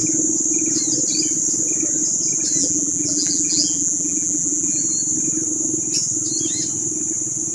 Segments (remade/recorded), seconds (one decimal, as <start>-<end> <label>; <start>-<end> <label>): 0.0-2.6 recorded; 2.6-4.8 remade; 4.8-7.5 recorded